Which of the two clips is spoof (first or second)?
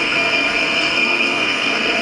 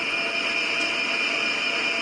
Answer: first